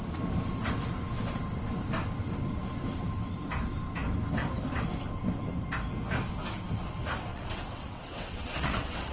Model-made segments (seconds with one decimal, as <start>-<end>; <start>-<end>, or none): 7.3-9.1